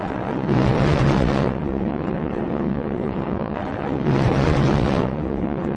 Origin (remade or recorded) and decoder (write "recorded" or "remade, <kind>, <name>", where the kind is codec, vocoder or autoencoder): remade, vocoder, WaveNeXt